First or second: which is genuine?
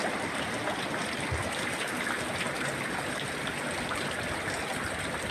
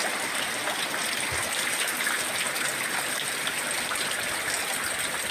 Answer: second